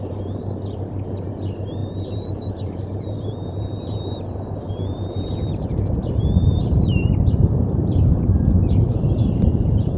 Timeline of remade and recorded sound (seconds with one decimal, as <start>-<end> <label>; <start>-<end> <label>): 0.0-1.8 recorded; 1.8-4.4 remade; 4.4-4.9 recorded; 4.9-10.0 remade